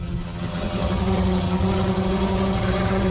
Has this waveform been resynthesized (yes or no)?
yes